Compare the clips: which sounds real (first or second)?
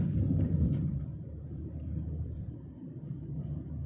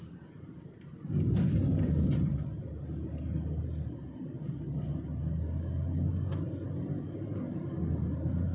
second